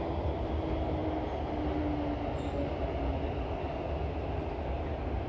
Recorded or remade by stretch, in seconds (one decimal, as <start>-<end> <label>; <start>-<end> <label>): 0.0-5.3 recorded